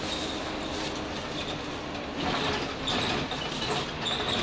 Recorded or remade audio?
recorded